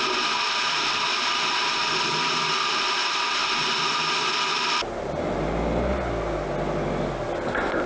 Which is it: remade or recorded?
recorded